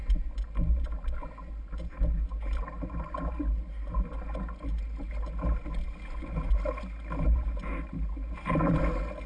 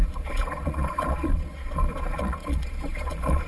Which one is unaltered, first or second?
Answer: first